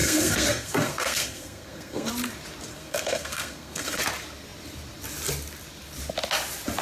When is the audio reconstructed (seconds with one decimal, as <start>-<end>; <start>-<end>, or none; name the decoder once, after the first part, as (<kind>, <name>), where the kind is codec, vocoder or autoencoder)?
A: 0.0-2.1 (codec, SNAC); 2.7-4.0